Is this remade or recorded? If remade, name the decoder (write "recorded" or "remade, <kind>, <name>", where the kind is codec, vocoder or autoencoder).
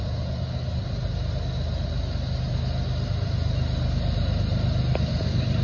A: recorded